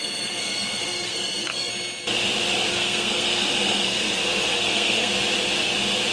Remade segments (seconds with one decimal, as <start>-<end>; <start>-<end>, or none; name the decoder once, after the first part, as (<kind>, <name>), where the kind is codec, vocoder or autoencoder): 0.0-1.7 (codec, SNAC); 2.7-5.1